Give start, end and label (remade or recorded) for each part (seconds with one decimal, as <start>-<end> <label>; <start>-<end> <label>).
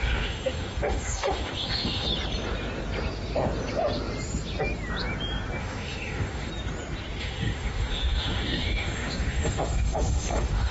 0.0-2.1 remade; 2.1-5.6 recorded; 5.6-6.5 remade; 6.5-7.2 recorded; 7.2-10.7 remade